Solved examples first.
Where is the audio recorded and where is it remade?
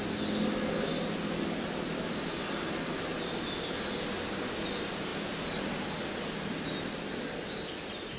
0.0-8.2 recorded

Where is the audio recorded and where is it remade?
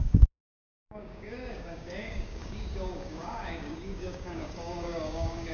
0.0-5.5 remade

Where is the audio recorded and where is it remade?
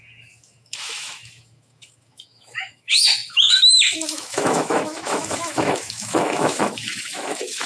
0.0-7.7 remade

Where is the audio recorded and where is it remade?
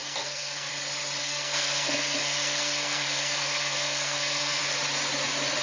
0.0-0.7 remade; 0.7-1.2 recorded; 1.2-4.6 remade; 4.6-5.6 recorded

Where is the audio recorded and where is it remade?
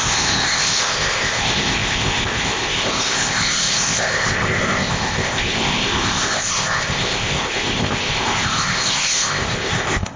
0.0-10.2 remade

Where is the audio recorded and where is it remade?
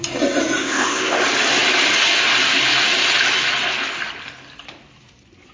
0.0-0.6 recorded; 0.6-1.2 remade; 1.2-5.5 recorded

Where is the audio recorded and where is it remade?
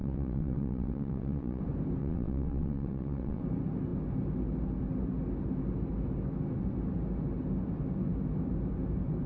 0.0-1.6 remade; 1.6-2.0 recorded; 2.0-3.4 remade; 3.4-9.3 recorded